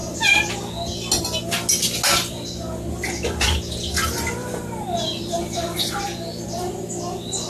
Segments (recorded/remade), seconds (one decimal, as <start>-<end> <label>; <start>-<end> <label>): 0.0-0.5 remade; 0.5-4.4 recorded; 4.4-6.7 remade; 6.7-7.5 recorded